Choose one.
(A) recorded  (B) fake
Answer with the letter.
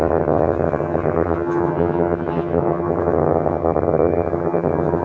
B